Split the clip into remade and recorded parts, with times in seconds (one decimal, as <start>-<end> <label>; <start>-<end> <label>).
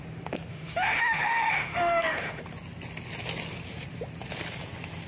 0.0-0.5 recorded; 0.5-2.4 remade; 2.4-5.1 recorded